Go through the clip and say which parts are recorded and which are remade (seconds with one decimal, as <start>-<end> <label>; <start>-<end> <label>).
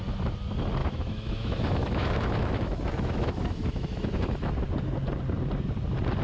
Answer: 0.0-0.8 recorded; 0.8-4.5 remade; 4.5-6.2 recorded